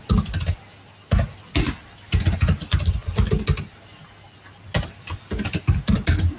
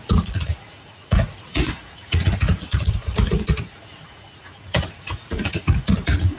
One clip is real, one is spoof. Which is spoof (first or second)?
second